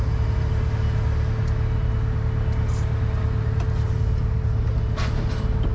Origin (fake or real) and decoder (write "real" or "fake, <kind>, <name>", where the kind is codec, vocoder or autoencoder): real